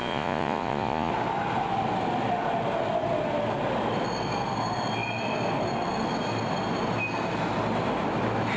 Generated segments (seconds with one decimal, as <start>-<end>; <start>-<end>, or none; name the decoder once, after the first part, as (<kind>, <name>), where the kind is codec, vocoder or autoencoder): 0.0-1.1 (vocoder, Vocos)